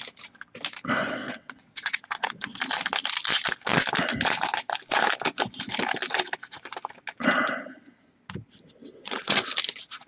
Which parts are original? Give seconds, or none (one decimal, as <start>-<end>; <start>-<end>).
0.0-1.2; 2.6-8.8; 9.4-10.1